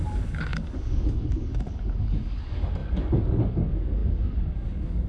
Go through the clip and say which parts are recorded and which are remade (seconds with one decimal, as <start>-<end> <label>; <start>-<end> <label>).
0.0-5.1 remade